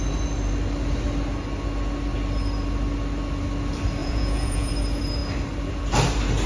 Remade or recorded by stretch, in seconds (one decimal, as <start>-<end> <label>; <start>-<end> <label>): 0.0-4.0 recorded; 4.0-4.7 remade; 4.7-6.5 recorded